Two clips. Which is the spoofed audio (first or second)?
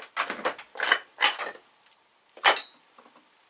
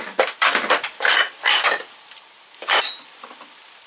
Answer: second